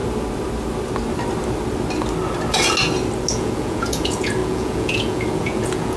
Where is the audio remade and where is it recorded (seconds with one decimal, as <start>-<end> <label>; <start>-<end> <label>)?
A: 0.0-3.3 recorded; 3.3-6.0 remade